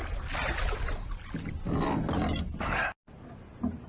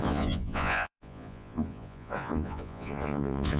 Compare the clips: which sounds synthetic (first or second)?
second